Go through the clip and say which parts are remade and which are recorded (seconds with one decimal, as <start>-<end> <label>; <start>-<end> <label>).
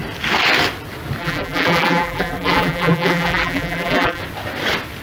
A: 0.0-1.2 recorded; 1.2-4.2 remade; 4.2-5.0 recorded